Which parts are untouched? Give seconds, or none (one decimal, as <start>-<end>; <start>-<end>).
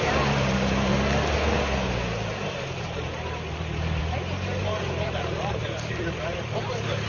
0.9-2.8; 4.0-4.6